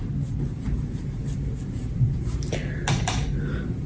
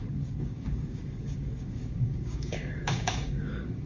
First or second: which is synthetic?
second